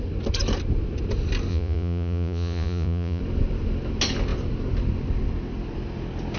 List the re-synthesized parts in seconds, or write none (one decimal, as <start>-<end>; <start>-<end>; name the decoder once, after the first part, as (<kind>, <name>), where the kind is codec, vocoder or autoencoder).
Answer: 1.5-3.2 (vocoder, Vocos)